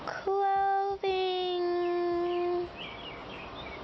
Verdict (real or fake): real